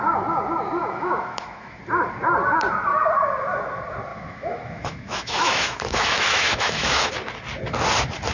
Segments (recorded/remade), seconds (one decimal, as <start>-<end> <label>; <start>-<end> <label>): 0.0-0.8 recorded; 0.8-1.8 remade; 1.8-4.1 recorded; 4.1-7.1 remade; 7.1-8.3 recorded